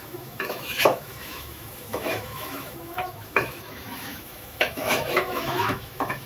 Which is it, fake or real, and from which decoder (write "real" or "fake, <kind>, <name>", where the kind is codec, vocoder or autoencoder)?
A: fake, autoencoder, DAC-VAE